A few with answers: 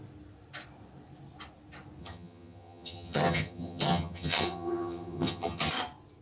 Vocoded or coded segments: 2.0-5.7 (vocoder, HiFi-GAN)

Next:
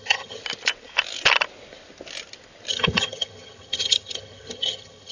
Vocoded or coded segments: 0.0-0.4 (vocoder, HiFi-GAN); 2.7-5.1

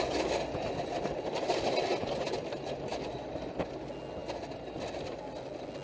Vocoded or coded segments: none

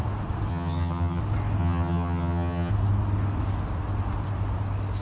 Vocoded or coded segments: 0.5-1.2 (vocoder, HiFi-GAN); 1.6-2.7

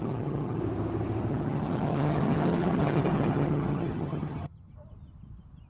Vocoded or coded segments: 0.0-0.6 (vocoder, HiFi-GAN); 1.3-4.7

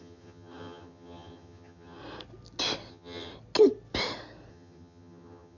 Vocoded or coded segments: 0.0-2.0 (vocoder, HiFi-GAN); 2.9-3.3; 4.5-5.6